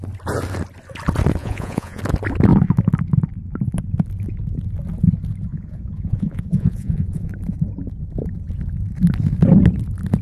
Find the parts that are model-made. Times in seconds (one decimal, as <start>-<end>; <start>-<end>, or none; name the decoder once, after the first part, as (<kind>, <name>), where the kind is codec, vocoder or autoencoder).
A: 1.4-2.0 (vocoder, Vocos); 5.5-7.3